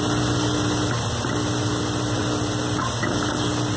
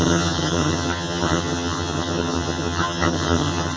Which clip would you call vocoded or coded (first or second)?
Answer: second